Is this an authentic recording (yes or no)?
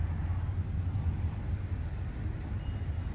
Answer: yes